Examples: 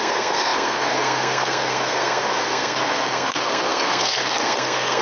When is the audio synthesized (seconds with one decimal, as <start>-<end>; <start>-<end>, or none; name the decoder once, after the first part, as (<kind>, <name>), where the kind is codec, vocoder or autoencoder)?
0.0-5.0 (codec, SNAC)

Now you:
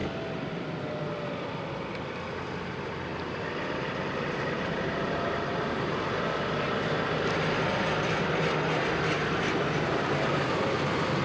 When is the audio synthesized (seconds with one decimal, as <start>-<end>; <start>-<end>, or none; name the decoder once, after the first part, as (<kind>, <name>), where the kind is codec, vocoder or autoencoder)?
3.1-5.7 (vocoder, BigVGAN v2)

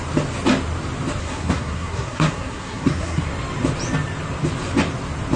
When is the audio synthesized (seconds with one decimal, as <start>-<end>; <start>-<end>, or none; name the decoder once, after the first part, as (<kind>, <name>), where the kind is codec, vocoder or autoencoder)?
1.2-3.3 (codec, SNAC)

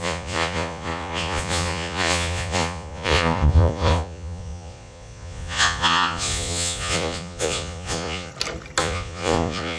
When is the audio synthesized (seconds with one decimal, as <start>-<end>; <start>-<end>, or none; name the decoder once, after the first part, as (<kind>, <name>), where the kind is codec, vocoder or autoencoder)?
0.0-8.3 (vocoder, Vocos); 8.8-9.8

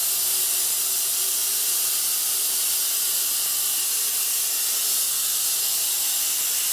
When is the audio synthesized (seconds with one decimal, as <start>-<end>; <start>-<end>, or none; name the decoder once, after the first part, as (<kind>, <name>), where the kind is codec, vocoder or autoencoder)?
1.1-2.8 (vocoder, BigVGAN v2)

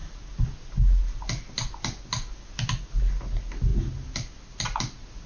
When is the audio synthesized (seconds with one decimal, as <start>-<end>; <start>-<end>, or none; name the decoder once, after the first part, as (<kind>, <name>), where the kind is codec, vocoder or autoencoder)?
none

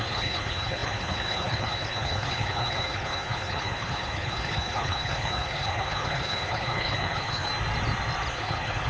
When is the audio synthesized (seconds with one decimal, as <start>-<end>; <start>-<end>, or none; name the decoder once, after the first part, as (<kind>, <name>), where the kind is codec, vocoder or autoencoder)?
0.0-7.5 (codec, HILCodec); 8.3-8.9

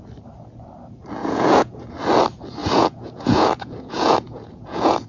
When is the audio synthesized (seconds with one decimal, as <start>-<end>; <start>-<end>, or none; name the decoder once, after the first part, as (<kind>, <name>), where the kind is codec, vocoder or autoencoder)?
1.2-1.9 (vocoder, Vocos); 2.6-5.1